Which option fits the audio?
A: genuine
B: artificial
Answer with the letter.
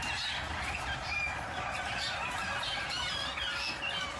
A